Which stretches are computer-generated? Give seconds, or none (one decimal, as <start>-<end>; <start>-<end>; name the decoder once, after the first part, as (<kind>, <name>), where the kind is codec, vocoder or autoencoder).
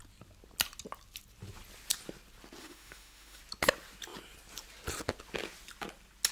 2.6-3.4 (autoencoder, DAC-VAE)